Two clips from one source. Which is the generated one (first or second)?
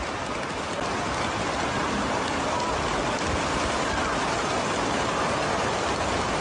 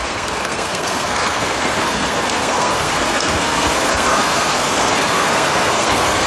second